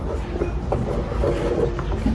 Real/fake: real